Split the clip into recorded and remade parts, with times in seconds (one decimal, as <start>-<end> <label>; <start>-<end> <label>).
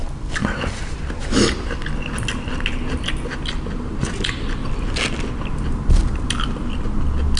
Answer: 0.0-0.4 recorded; 0.4-1.3 remade; 1.3-7.4 recorded